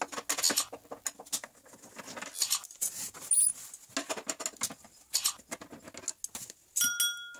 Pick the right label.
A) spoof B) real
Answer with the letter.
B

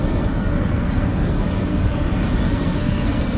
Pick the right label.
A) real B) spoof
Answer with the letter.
B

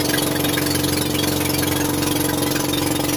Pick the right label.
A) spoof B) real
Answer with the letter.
B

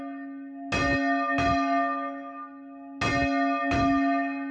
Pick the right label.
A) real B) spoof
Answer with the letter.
A